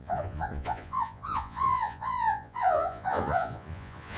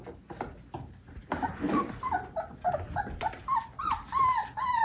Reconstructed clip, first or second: first